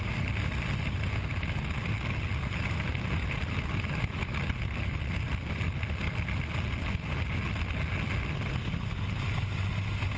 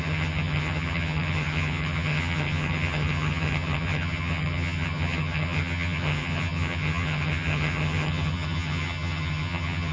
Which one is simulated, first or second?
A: second